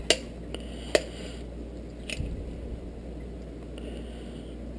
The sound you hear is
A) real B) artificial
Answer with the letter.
A